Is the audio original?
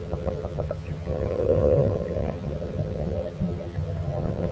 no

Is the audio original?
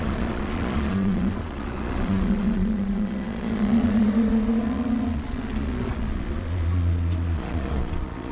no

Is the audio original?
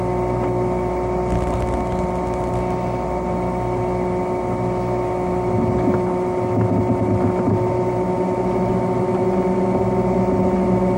yes